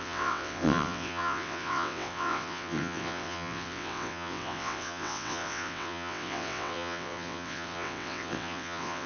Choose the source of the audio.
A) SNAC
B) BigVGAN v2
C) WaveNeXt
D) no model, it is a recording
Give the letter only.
C